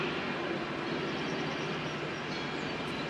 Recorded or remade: recorded